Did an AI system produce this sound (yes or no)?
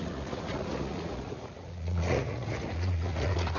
yes